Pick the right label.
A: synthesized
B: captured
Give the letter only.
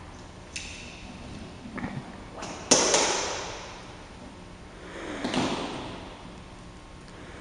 B